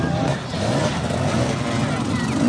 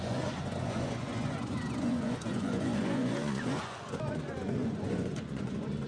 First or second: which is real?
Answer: first